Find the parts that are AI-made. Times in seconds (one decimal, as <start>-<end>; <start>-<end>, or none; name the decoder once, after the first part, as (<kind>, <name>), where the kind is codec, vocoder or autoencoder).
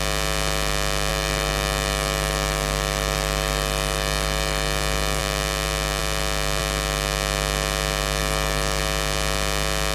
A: 1.1-5.2 (autoencoder, DAC-VAE); 8.2-8.8